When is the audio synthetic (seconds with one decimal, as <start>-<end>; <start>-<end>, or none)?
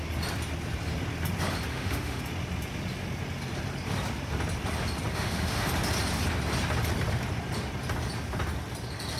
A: 1.7-2.2; 5.1-5.7